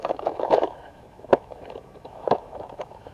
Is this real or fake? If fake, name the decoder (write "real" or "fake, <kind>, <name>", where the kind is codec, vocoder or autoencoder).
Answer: fake, autoencoder, DAC-VAE